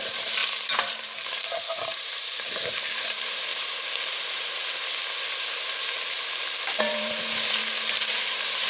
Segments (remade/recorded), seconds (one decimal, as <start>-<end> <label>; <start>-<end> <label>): 0.0-3.5 remade; 3.5-6.8 recorded; 6.8-7.6 remade; 7.6-8.1 recorded; 8.1-8.7 remade